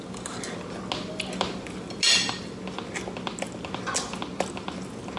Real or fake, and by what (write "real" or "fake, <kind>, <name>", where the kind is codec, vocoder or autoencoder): real